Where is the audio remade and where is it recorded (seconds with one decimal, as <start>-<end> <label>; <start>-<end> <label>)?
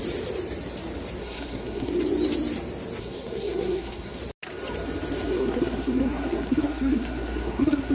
0.0-1.2 recorded; 1.2-1.9 remade; 1.9-3.0 recorded; 3.0-4.2 remade; 4.2-5.3 recorded; 5.3-7.9 remade